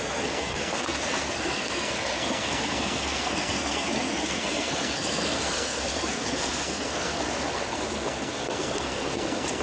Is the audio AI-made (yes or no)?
yes